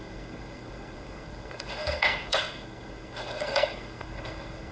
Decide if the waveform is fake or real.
fake